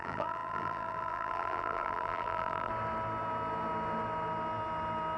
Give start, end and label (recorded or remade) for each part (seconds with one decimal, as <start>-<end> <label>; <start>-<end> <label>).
0.0-2.7 remade; 2.7-5.2 recorded